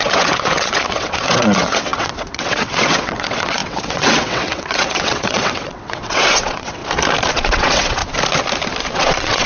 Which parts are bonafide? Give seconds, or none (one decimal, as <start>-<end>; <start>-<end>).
6.8-7.3; 8.0-8.9